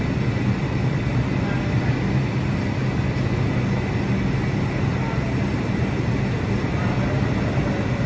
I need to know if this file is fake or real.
real